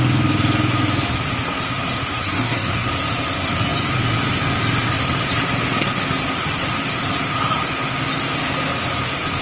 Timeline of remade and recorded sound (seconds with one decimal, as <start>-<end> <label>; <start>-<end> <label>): 0.0-2.2 recorded; 2.2-2.9 remade; 2.9-9.4 recorded

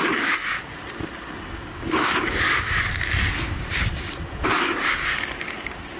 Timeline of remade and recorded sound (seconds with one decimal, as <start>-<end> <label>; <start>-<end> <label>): 0.0-0.7 remade; 0.7-1.6 recorded; 1.6-2.9 remade; 2.9-4.8 recorded; 4.8-6.0 remade